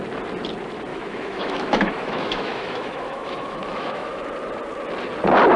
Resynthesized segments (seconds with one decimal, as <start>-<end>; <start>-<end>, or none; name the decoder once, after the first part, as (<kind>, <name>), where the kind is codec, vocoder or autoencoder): 0.9-4.3 (autoencoder, DAC-VAE)